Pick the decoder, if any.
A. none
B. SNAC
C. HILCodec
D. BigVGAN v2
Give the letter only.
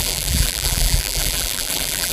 D